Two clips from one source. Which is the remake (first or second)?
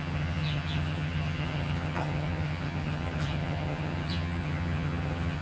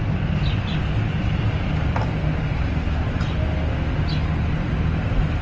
first